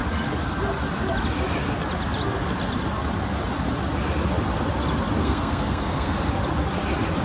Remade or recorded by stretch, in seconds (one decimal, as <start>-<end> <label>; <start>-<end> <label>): 0.0-5.2 recorded; 5.2-6.1 remade; 6.1-7.2 recorded